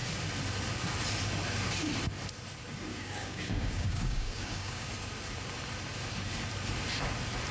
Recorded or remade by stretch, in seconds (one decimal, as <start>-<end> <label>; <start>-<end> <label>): 0.0-2.9 recorded; 2.9-4.9 remade; 4.9-7.5 recorded